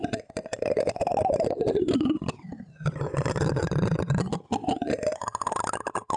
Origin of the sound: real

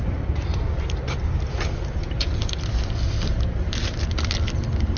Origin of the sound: real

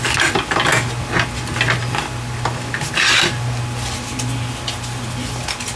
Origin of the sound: real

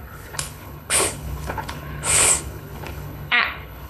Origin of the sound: fake